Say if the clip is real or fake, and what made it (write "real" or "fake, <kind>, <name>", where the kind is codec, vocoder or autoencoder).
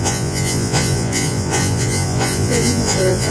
fake, vocoder, Vocos